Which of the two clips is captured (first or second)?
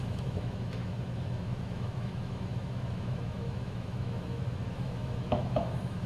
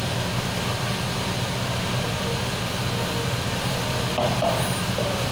second